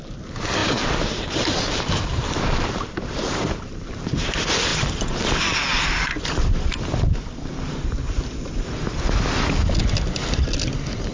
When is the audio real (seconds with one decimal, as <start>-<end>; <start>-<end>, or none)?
0.0-0.6; 4.3-11.1